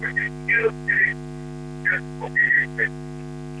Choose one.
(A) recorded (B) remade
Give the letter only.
A